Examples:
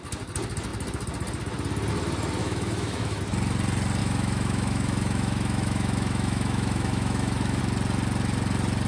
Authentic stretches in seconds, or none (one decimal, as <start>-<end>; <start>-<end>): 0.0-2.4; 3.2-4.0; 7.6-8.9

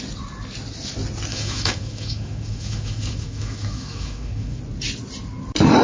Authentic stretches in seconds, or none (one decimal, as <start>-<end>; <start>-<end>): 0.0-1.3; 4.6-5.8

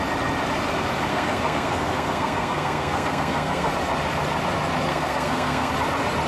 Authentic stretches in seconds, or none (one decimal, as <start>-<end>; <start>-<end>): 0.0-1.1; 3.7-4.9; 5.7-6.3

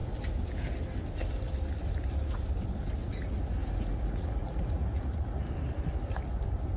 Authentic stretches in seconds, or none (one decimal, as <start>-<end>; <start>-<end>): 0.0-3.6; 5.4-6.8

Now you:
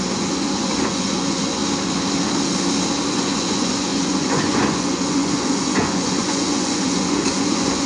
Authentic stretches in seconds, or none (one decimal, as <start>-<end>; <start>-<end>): 1.6-3.1

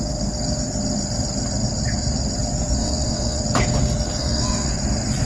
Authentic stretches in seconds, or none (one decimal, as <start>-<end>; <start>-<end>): 0.0-2.8; 3.4-4.2; 4.7-5.3